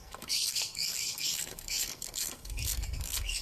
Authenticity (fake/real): fake